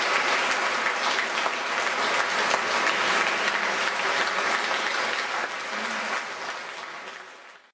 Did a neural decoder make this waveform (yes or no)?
no